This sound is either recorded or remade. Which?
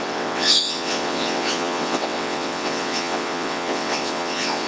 remade